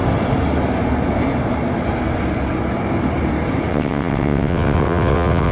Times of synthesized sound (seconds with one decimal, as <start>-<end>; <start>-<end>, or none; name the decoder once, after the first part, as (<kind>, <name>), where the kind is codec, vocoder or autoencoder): 3.7-5.5 (vocoder, WaveNeXt)